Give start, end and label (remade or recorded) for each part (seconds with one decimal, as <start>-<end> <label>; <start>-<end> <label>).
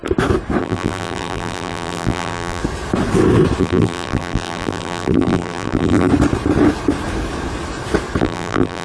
0.0-0.6 recorded; 0.6-2.6 remade; 2.6-3.6 recorded; 3.6-6.1 remade; 6.1-8.2 recorded; 8.2-8.8 remade